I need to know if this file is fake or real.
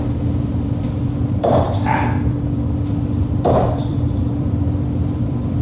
fake